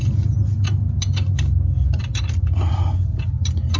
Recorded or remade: recorded